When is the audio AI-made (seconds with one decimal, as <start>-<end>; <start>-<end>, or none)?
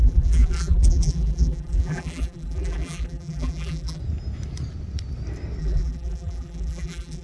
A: 0.0-4.0; 5.6-7.2